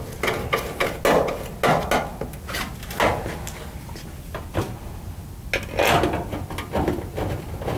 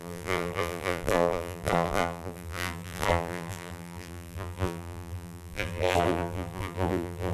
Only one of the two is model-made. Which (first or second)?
second